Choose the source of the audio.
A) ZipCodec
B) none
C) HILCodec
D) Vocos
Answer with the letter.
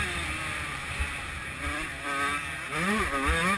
B